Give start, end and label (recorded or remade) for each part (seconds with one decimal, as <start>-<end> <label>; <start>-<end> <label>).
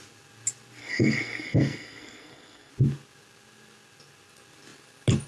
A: 0.0-0.8 recorded; 0.8-2.7 remade; 2.7-5.3 recorded